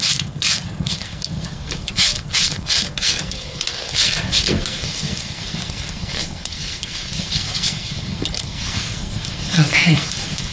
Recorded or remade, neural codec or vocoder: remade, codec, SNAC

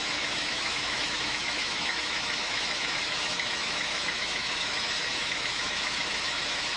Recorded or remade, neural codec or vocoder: remade, autoencoder, DAC-VAE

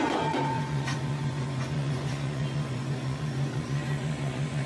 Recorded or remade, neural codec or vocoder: remade, vocoder, Vocos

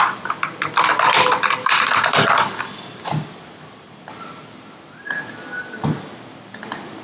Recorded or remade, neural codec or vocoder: remade, vocoder, BigVGAN v2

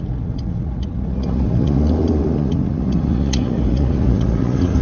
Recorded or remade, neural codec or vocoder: remade, vocoder, Vocos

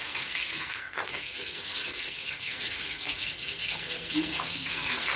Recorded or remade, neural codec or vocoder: remade, codec, SNAC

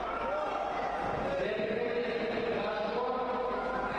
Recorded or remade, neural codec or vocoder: recorded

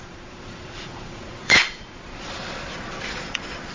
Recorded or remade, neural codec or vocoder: remade, vocoder, Vocos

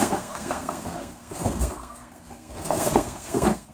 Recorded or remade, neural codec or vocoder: remade, codec, SNAC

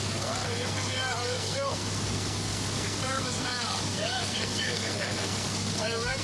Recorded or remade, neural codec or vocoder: remade, codec, SNAC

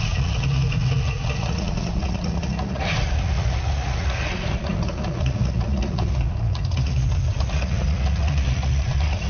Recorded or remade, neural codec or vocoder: remade, vocoder, Vocos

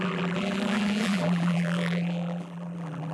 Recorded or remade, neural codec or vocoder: remade, vocoder, BigVGAN v2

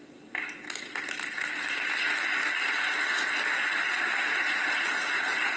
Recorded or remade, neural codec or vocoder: recorded